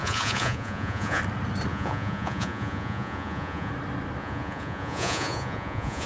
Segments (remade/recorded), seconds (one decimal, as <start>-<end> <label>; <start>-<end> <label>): 0.0-1.2 remade; 1.2-1.7 recorded; 1.7-3.7 remade; 3.7-4.2 recorded; 4.2-6.1 remade